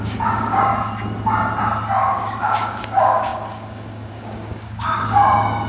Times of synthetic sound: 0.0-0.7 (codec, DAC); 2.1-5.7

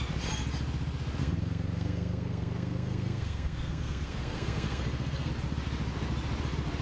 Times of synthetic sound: 1.2-5.3 (codec, SNAC)

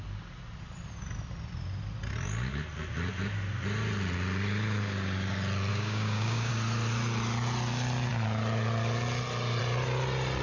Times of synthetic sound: 5.7-6.5 (codec, DAC)

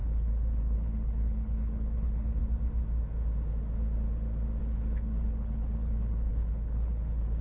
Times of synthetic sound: 0.0-2.4 (codec, HILCodec); 4.6-7.4